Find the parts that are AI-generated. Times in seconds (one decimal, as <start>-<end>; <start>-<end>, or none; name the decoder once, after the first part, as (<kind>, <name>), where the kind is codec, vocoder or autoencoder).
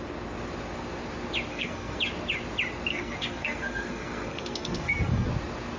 1.5-2.0 (codec, SNAC); 2.9-5.3